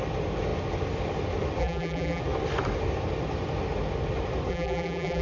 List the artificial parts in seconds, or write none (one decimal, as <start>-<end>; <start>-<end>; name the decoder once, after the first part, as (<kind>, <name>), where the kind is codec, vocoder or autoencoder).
1.6-2.2 (vocoder, BigVGAN v2); 4.5-5.2